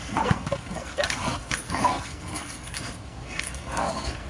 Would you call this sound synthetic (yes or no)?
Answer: yes